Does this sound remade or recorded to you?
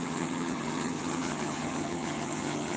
remade